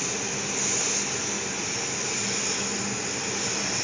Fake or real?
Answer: real